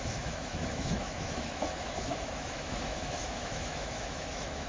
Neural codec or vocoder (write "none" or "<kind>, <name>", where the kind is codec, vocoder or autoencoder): autoencoder, DAC-VAE